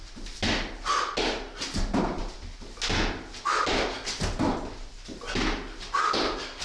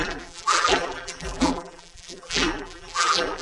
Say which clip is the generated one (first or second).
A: second